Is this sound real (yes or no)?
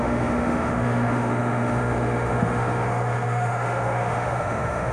no